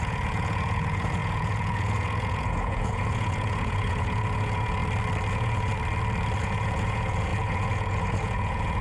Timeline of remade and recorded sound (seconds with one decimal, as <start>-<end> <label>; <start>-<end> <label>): 0.0-4.8 remade; 4.8-5.3 recorded; 5.3-5.7 remade; 5.7-6.4 recorded; 6.4-8.8 remade